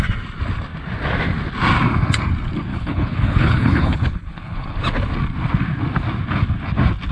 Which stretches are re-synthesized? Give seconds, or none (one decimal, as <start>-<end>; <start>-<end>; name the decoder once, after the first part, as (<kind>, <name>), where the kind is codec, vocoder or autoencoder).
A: 2.7-4.8 (codec, HILCodec)